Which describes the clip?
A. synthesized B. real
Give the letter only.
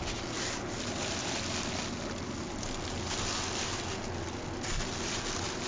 B